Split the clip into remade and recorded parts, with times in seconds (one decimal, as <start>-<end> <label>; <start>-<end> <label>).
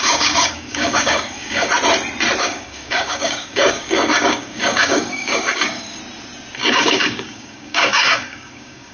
0.0-1.7 remade; 1.7-2.4 recorded; 2.4-6.0 remade; 6.0-6.7 recorded; 6.7-8.9 remade